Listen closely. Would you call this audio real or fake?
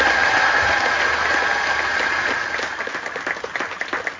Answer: real